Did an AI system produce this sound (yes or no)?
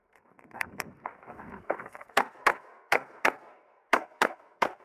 yes